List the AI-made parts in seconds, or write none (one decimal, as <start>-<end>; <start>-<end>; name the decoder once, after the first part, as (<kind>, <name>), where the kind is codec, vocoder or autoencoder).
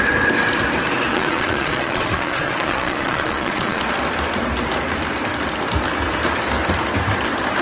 1.1-3.8 (vocoder, Vocos)